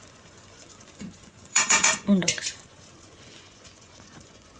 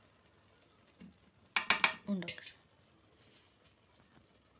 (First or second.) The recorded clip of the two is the second